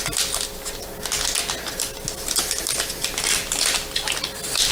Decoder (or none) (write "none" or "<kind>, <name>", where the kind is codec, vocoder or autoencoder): none